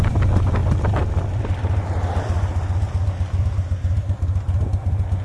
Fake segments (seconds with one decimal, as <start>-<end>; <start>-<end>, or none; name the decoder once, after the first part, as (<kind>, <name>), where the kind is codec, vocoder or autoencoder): none